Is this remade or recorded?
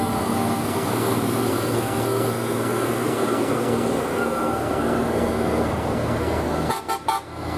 remade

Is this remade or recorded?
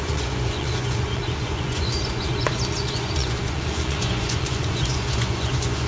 remade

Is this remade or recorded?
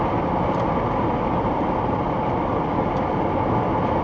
recorded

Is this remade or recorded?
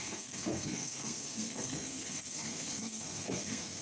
remade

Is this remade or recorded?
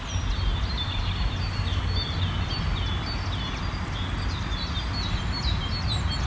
recorded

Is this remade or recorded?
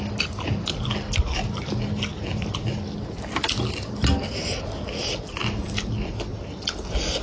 recorded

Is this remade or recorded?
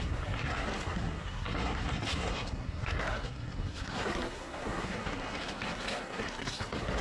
remade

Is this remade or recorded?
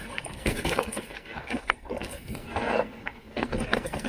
remade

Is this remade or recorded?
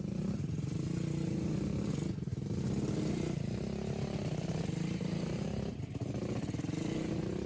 recorded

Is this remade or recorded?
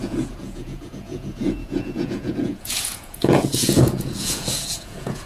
remade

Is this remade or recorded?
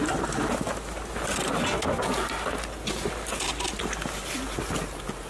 recorded